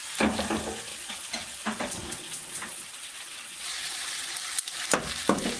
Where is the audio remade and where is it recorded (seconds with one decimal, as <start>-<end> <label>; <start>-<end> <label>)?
0.0-0.9 recorded; 0.9-4.3 remade; 4.3-5.6 recorded